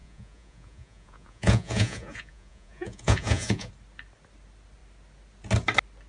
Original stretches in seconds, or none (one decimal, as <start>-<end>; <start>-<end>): 3.7-6.1